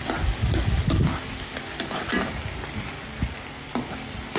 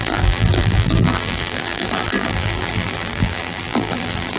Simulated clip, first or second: second